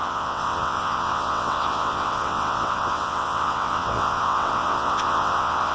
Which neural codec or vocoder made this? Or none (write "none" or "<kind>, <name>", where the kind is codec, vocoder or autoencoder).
vocoder, WaveNeXt